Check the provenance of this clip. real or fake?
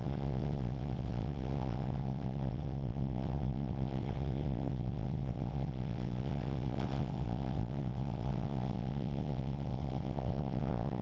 fake